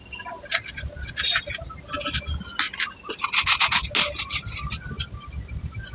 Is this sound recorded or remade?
recorded